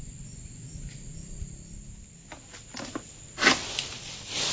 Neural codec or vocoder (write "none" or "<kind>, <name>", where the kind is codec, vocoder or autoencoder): none